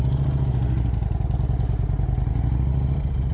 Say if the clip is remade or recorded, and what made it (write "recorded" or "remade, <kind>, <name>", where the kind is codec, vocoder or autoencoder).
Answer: recorded